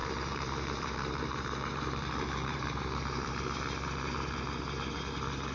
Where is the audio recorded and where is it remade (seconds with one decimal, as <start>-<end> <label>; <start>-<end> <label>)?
0.0-3.3 remade; 3.3-5.5 recorded

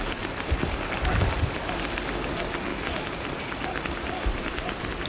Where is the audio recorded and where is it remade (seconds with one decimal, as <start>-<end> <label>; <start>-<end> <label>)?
0.0-4.3 recorded; 4.3-5.1 remade

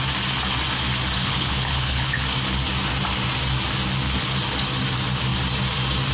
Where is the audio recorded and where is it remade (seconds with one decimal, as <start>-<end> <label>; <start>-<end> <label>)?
0.0-1.2 recorded; 1.2-2.2 remade; 2.2-6.1 recorded

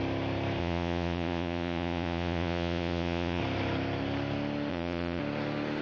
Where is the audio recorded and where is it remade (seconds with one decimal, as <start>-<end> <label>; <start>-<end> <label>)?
0.0-0.6 recorded; 0.6-3.4 remade; 3.4-4.7 recorded; 4.7-5.2 remade; 5.2-5.8 recorded

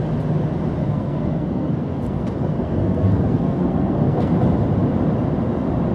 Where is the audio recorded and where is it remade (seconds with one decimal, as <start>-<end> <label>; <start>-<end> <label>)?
0.0-0.8 recorded; 0.8-4.3 remade; 4.3-5.9 recorded

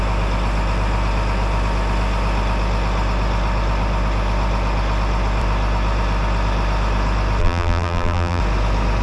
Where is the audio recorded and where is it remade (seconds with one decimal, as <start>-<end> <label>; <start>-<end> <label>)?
0.0-7.4 recorded; 7.4-8.4 remade; 8.4-9.0 recorded

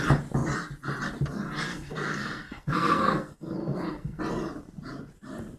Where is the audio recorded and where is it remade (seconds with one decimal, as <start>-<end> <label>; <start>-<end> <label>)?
0.0-1.7 recorded; 1.7-4.2 remade; 4.2-5.6 recorded